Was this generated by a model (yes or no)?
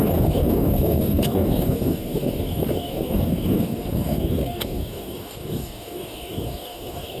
yes